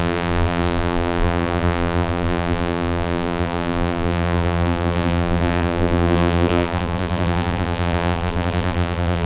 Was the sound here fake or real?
fake